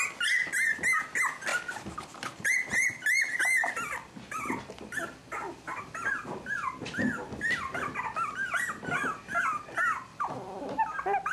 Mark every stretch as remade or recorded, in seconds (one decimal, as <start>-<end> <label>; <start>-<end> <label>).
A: 0.0-1.5 recorded; 1.5-6.1 remade; 6.1-10.1 recorded; 10.1-10.7 remade; 10.7-11.3 recorded